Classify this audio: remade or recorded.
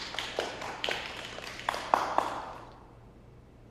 remade